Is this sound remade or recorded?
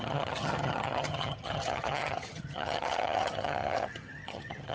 remade